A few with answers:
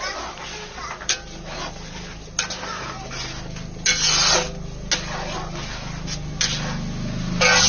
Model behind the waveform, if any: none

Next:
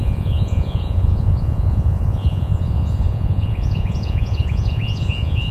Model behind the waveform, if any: vocoder, Vocos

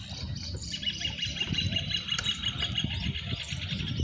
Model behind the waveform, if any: vocoder, BigVGAN v2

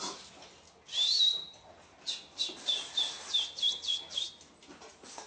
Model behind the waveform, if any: none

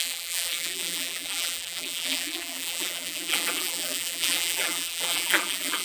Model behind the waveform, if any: vocoder, BigVGAN v2